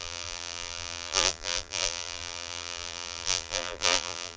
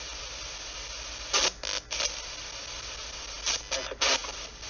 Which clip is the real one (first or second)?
second